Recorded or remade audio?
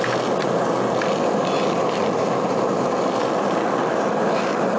recorded